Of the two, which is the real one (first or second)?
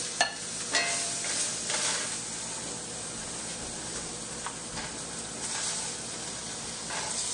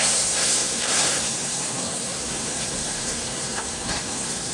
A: first